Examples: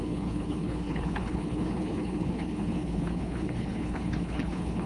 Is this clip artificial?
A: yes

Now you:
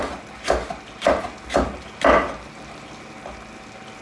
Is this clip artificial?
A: no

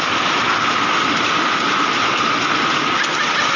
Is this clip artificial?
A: no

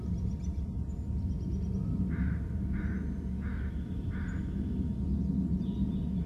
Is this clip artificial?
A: no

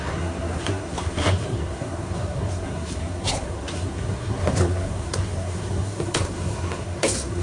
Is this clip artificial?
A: yes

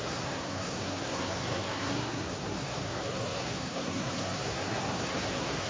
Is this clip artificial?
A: yes